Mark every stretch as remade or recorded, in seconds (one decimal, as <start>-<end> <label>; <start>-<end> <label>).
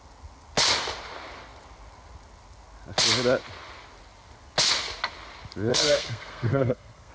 0.0-5.7 recorded; 5.7-7.1 remade